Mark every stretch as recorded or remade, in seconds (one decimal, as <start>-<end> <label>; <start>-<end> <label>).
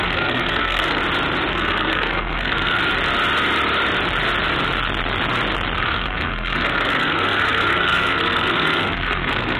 0.0-1.0 remade; 1.0-1.5 recorded; 1.5-2.8 remade; 2.8-5.8 recorded; 5.8-9.6 remade